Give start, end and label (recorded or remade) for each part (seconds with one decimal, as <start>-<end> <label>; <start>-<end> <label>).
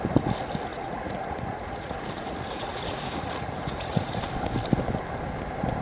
0.0-0.7 recorded; 0.7-4.2 remade; 4.2-5.8 recorded